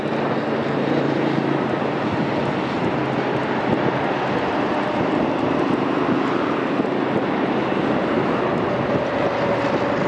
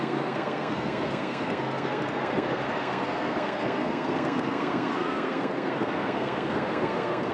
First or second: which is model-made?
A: second